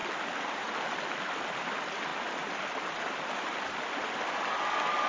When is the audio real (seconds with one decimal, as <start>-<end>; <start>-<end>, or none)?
0.0-5.1